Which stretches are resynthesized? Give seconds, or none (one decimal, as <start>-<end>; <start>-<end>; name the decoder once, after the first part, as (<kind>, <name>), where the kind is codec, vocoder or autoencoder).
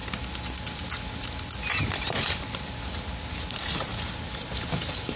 none